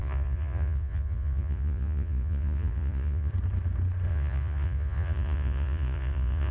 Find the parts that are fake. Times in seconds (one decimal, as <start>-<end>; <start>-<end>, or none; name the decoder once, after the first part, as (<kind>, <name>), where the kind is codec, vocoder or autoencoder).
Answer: 0.0-3.3 (vocoder, Vocos); 4.1-6.5